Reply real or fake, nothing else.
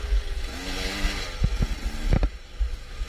real